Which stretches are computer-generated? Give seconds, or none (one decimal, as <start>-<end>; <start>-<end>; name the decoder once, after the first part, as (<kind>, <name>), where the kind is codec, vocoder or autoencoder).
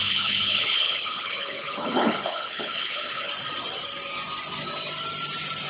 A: 0.0-3.3 (codec, HILCodec)